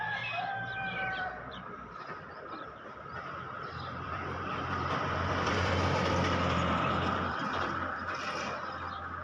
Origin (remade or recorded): remade